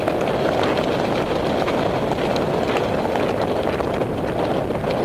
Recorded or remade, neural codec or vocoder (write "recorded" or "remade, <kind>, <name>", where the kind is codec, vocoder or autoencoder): recorded